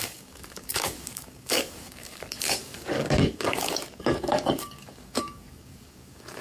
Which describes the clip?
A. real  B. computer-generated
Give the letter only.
B